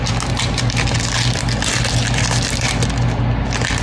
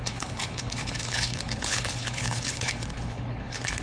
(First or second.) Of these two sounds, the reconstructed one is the second